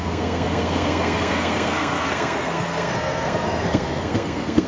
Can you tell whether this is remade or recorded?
remade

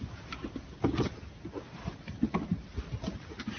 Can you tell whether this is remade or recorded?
recorded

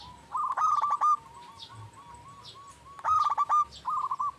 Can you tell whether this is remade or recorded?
recorded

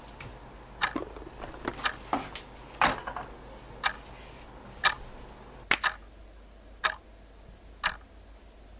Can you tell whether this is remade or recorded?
recorded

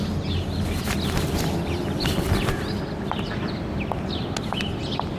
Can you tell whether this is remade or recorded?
recorded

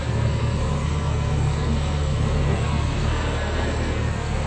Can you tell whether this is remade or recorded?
remade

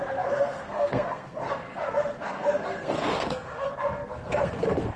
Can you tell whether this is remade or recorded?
remade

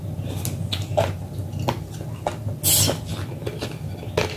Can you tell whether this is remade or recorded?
recorded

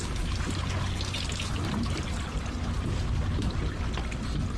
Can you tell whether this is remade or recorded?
recorded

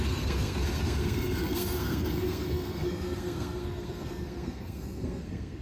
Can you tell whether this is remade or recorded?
remade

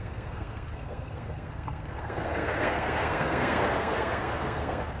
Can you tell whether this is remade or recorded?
remade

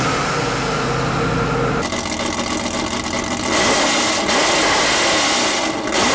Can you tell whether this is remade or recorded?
recorded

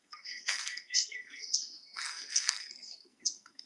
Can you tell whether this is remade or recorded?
remade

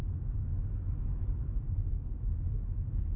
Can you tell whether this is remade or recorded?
recorded